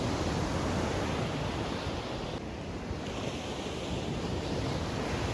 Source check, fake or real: real